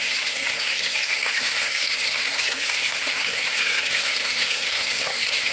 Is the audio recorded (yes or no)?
no